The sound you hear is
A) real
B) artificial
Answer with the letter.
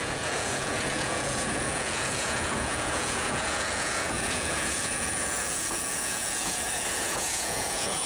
B